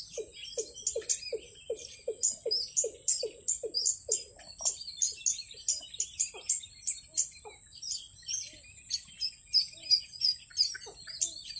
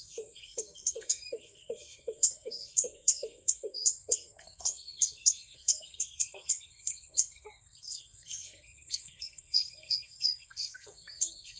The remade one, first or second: second